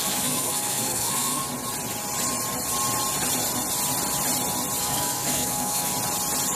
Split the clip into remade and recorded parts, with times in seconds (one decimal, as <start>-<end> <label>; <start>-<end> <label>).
0.0-1.4 remade; 1.4-4.8 recorded; 4.8-5.9 remade; 5.9-6.6 recorded